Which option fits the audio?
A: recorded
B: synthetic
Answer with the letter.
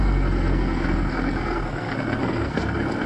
B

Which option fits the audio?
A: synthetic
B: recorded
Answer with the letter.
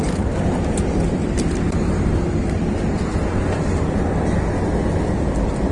B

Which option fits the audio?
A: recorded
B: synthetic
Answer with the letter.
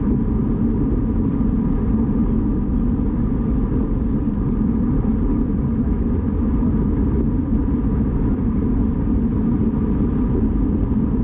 A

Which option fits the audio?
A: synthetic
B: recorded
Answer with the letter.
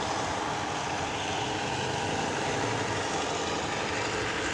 B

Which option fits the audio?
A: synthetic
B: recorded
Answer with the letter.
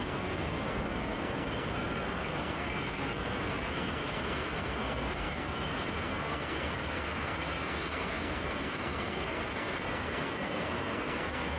A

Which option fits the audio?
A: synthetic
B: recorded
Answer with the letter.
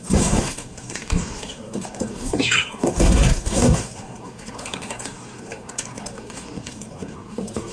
A